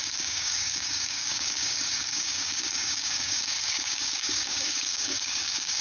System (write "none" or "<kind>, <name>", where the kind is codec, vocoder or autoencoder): codec, DAC